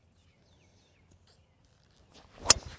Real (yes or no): yes